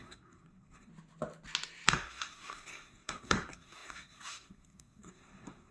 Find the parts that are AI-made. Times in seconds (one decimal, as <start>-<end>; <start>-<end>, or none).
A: 0.0-0.9; 1.9-5.7